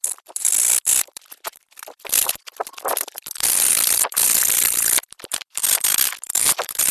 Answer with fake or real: fake